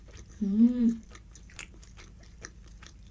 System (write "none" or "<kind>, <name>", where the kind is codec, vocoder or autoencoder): vocoder, BigVGAN v2